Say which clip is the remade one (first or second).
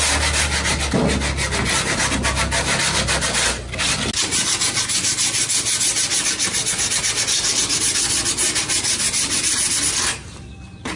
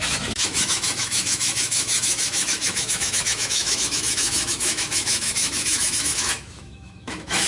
second